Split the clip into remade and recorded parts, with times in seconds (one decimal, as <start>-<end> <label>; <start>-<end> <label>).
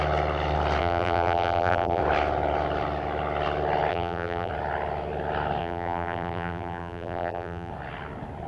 0.0-0.8 recorded; 0.8-2.0 remade; 2.0-3.9 recorded; 3.9-4.5 remade; 4.5-5.6 recorded; 5.6-7.7 remade; 7.7-8.5 recorded